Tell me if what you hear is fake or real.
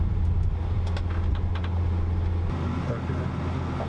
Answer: real